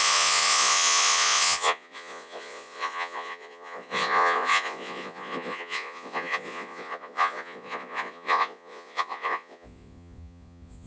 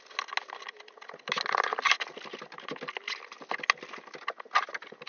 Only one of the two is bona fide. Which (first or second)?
second